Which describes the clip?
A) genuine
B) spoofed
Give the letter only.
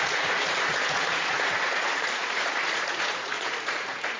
B